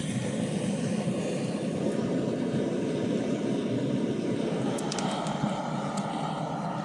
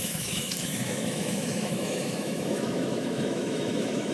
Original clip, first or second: first